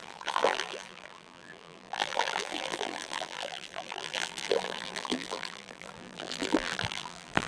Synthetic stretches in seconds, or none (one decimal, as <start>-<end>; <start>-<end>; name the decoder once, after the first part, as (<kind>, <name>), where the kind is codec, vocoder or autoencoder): 0.0-7.5 (vocoder, BigVGAN v2)